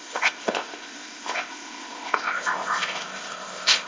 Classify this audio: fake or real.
fake